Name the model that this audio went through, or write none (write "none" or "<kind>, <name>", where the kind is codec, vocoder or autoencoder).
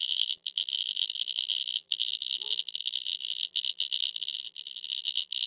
vocoder, BigVGAN v2